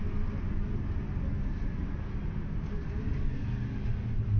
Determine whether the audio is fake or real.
real